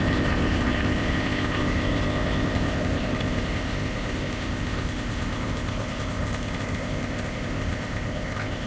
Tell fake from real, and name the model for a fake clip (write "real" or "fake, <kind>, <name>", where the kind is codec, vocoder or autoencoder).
fake, codec, ZipCodec